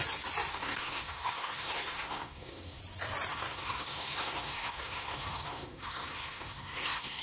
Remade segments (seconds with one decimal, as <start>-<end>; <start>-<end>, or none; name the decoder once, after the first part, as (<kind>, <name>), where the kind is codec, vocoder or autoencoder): 0.5-2.8 (codec, SNAC); 3.3-7.2